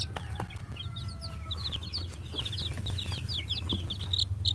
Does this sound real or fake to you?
real